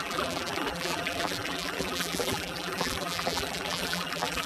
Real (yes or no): no